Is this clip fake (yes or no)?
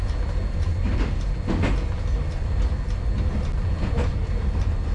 no